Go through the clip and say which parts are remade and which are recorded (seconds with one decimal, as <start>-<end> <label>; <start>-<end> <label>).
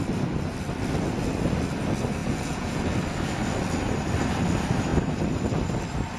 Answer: 0.0-2.2 recorded; 2.2-2.8 remade; 2.8-6.2 recorded